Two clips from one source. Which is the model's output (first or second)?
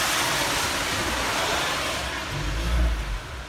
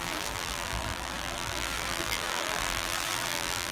second